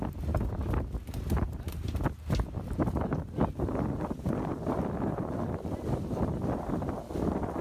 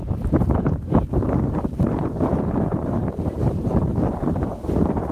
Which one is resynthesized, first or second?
second